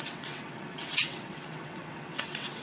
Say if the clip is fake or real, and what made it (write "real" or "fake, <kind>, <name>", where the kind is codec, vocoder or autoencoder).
fake, vocoder, WaveNeXt